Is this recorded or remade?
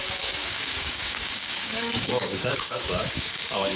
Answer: remade